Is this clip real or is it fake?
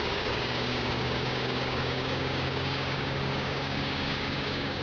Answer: fake